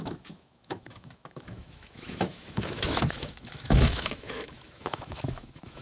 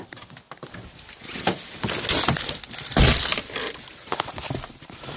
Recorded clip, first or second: second